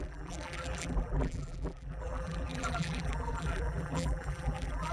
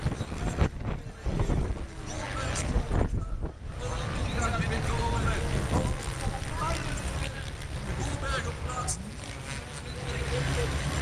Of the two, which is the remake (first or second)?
first